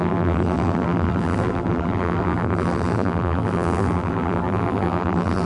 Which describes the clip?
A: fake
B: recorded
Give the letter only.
A